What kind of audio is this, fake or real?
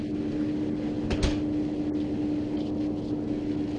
real